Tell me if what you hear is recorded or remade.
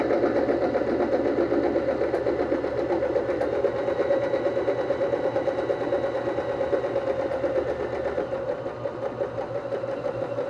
recorded